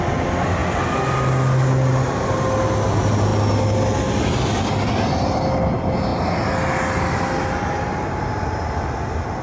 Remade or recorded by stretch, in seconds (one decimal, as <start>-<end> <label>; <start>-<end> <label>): 0.0-9.4 recorded